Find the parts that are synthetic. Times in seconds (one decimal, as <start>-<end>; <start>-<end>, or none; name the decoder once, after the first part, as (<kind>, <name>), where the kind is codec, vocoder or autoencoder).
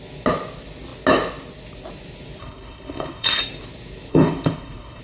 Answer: 2.4-3.4 (codec, HILCodec); 4.1-5.0